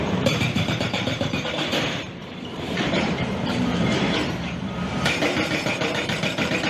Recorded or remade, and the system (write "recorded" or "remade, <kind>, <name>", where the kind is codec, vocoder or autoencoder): remade, vocoder, BigVGAN v2